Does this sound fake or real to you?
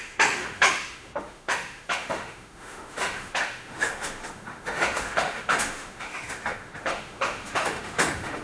fake